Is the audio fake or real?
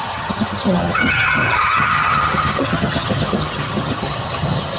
fake